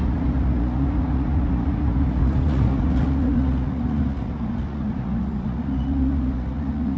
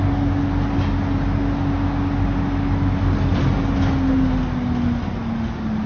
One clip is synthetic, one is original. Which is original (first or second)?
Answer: second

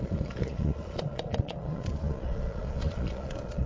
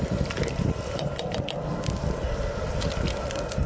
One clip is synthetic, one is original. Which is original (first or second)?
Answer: second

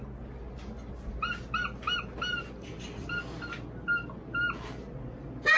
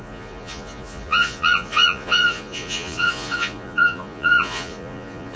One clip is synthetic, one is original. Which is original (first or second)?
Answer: first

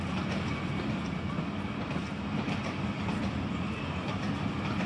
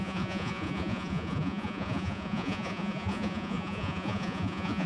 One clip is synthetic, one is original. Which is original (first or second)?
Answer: first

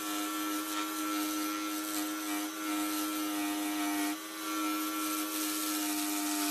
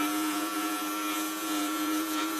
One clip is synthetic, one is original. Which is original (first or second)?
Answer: first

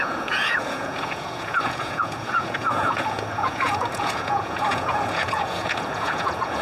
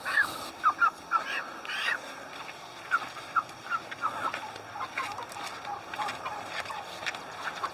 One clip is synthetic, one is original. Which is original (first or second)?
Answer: second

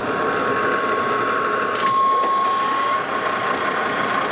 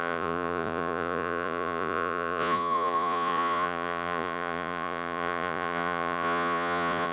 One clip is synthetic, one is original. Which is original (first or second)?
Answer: first